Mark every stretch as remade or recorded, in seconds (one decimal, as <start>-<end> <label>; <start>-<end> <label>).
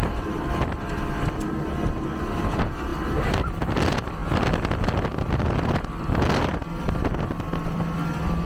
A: 0.0-0.5 remade; 0.5-2.9 recorded; 2.9-3.4 remade; 3.4-8.5 recorded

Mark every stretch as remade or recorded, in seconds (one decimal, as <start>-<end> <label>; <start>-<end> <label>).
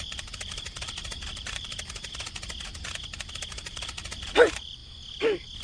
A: 0.0-1.7 remade; 1.7-3.5 recorded; 3.5-4.8 remade; 4.8-5.6 recorded